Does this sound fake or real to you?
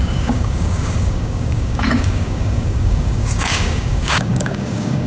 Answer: fake